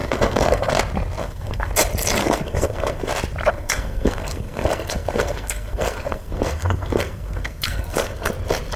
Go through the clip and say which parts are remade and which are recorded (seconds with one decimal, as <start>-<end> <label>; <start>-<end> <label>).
0.0-0.7 remade; 0.7-1.2 recorded; 1.2-1.7 remade; 1.7-2.2 recorded; 2.2-3.1 remade; 3.1-3.5 recorded; 3.5-8.3 remade; 8.3-8.8 recorded